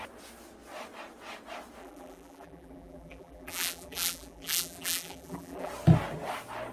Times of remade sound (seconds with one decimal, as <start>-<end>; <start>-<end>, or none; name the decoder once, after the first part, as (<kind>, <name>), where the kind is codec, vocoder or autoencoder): 1.8-5.7 (vocoder, BigVGAN v2)